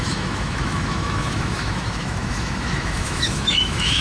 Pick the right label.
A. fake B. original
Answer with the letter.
A